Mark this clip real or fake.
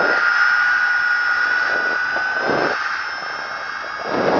real